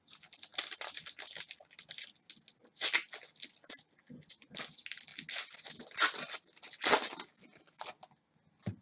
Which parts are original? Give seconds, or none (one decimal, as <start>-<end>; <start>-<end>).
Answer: 0.0-8.8